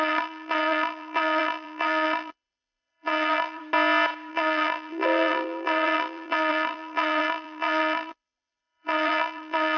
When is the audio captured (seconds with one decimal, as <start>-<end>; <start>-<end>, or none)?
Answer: 3.6-4.3